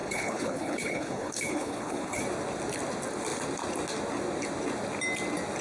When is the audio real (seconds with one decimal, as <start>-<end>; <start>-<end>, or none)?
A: 2.2-5.6